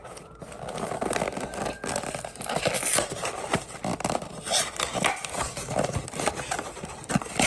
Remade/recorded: recorded